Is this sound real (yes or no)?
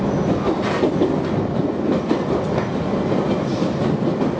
yes